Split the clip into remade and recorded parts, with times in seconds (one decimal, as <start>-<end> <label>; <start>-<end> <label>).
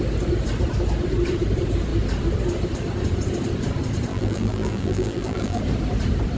0.0-4.1 recorded; 4.1-5.6 remade; 5.6-6.4 recorded